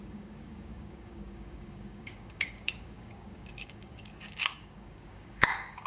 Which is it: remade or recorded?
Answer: remade